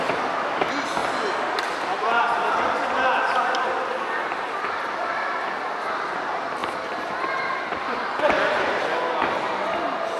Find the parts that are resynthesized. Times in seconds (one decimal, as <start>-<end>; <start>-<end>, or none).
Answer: none